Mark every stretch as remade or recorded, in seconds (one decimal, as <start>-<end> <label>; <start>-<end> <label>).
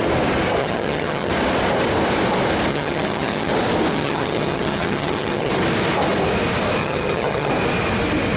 0.0-0.6 recorded; 0.6-1.3 remade; 1.3-2.7 recorded; 2.7-3.5 remade; 3.5-3.9 recorded; 3.9-5.5 remade; 5.5-6.8 recorded; 6.8-7.5 remade; 7.5-8.4 recorded